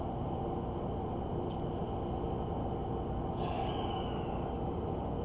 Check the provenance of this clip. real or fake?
real